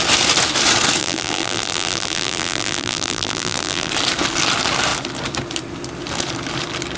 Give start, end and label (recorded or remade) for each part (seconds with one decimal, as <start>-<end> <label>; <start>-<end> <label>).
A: 0.0-1.0 recorded; 1.0-3.9 remade; 3.9-7.0 recorded